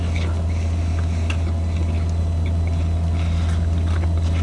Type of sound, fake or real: real